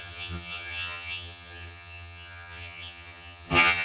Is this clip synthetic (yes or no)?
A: yes